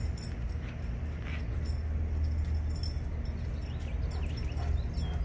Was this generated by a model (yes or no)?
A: no